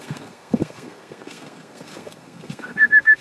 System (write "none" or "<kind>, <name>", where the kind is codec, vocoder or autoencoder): codec, SNAC